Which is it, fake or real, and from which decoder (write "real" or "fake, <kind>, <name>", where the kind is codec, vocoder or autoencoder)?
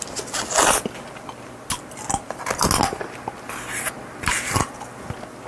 real